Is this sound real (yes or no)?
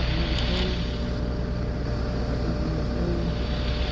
yes